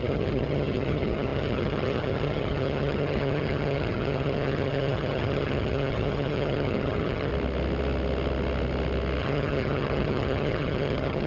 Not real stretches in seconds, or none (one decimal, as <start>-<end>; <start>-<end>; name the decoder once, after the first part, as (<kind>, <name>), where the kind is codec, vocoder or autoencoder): 0.0-7.3 (vocoder, HiFi-GAN); 9.2-11.3